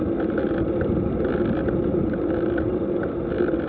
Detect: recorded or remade recorded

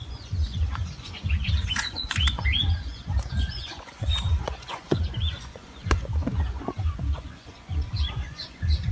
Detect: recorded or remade remade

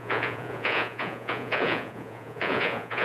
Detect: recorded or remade remade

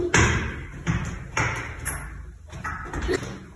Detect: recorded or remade recorded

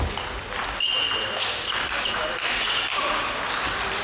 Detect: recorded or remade recorded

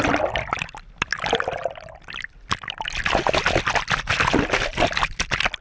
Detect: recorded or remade recorded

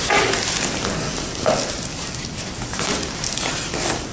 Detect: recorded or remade recorded